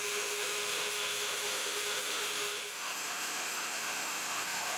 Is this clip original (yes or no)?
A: no